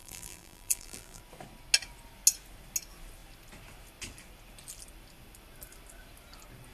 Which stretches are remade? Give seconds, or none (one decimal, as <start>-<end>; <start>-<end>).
0.0-1.2